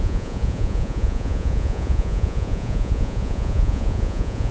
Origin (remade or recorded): remade